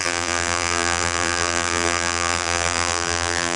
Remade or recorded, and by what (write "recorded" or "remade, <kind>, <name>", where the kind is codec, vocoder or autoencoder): remade, vocoder, BigVGAN v2